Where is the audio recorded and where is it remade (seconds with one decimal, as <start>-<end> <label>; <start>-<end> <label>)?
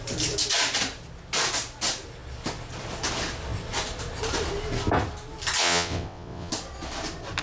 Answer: 0.0-5.6 recorded; 5.6-6.5 remade; 6.5-7.4 recorded